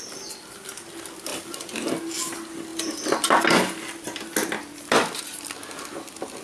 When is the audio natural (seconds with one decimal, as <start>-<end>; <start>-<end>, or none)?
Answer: 0.0-6.4